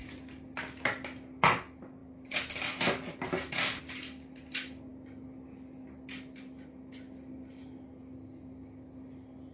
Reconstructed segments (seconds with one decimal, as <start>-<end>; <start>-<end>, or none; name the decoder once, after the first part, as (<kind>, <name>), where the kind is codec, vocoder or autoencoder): none